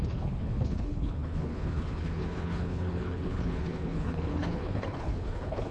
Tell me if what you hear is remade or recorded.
remade